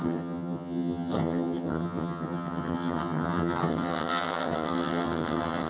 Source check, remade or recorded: remade